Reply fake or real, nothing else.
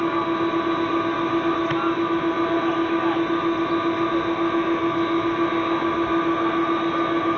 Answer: real